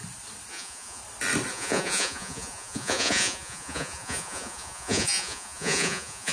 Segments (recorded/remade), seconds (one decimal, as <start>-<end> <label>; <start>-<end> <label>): 0.0-0.5 recorded; 0.5-1.0 remade; 1.0-1.5 recorded; 1.5-6.3 remade